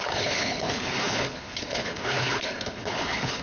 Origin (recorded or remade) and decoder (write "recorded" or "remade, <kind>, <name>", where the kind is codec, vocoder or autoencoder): remade, codec, HILCodec